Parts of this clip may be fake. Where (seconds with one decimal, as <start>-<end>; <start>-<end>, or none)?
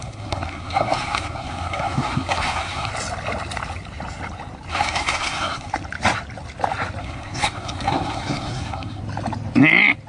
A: 0.0-2.9; 4.7-5.7; 7.0-9.0